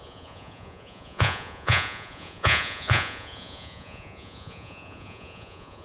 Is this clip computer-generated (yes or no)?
yes